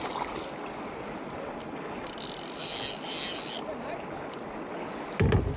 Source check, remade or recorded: recorded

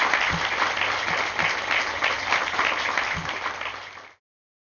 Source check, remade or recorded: recorded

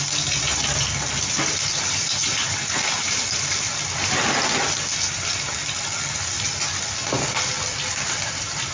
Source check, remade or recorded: recorded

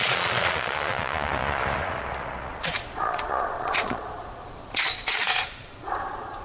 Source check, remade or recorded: remade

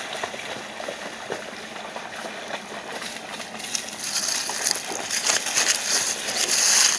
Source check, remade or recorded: recorded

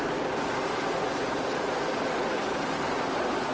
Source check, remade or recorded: recorded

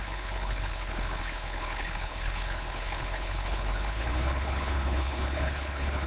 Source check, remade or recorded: remade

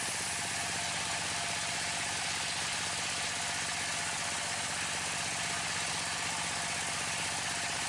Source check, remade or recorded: recorded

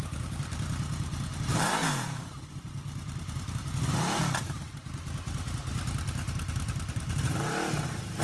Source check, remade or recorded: remade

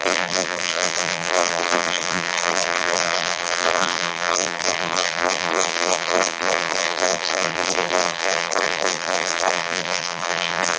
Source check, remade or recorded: remade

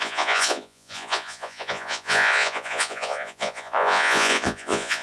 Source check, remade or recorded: remade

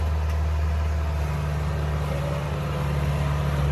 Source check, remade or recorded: recorded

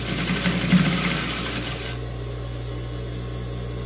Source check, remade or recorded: recorded